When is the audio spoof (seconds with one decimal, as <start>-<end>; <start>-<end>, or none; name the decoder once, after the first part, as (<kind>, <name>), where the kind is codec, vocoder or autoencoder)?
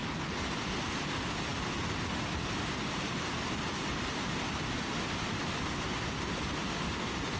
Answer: none